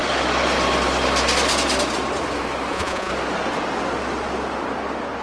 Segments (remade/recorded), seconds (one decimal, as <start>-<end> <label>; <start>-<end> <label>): 0.0-2.7 recorded; 2.7-3.1 remade; 3.1-5.2 recorded